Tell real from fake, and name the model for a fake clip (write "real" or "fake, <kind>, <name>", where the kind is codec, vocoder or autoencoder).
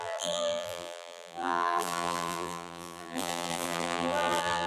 fake, vocoder, BigVGAN v2